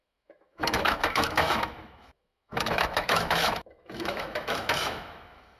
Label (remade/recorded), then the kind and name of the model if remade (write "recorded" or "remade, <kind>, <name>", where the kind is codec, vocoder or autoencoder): remade, autoencoder, DAC-VAE